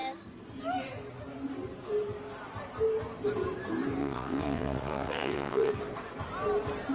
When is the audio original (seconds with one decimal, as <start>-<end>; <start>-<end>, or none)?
0.0-4.0; 5.7-6.9